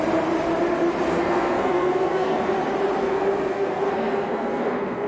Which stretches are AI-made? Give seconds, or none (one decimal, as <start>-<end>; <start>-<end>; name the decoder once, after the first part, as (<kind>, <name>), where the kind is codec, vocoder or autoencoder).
1.1-2.5 (codec, SNAC); 3.0-5.1

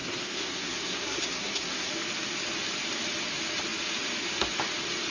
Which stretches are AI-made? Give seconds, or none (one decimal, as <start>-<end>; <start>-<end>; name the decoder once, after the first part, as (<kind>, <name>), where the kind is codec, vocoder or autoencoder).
0.0-1.9 (codec, SNAC)

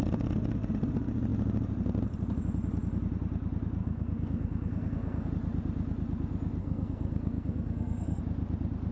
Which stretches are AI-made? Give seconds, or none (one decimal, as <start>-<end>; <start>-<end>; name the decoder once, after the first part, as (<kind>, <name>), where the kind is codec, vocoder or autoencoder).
3.8-5.3 (codec, SNAC); 6.6-8.2

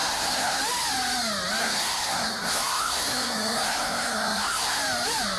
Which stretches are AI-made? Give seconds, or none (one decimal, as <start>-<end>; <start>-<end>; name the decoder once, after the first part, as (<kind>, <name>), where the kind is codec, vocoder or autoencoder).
0.0-0.6 (codec, SNAC); 1.6-4.8